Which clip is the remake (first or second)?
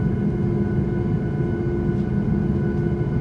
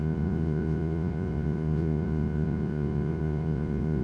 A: second